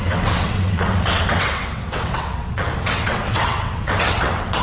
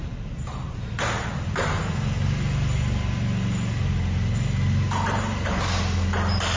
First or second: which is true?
second